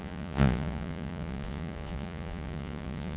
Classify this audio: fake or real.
fake